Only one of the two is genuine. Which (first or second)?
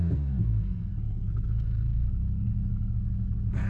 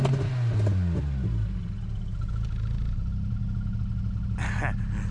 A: second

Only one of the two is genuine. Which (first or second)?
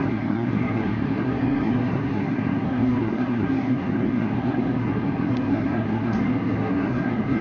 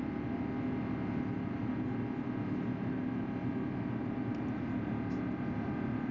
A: second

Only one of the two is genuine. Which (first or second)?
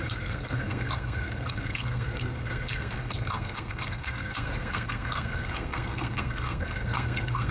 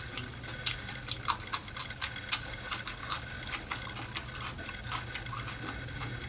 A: second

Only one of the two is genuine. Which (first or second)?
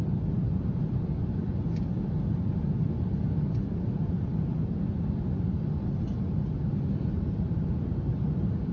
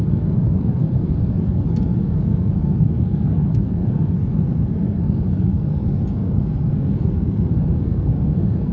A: first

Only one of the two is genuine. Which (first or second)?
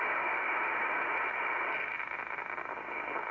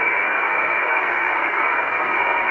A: first